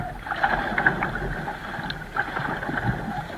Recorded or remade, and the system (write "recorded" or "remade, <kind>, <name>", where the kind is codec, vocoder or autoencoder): recorded